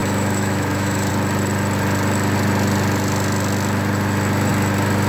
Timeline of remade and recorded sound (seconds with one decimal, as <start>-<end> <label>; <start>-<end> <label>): 0.0-1.1 remade; 1.1-5.1 recorded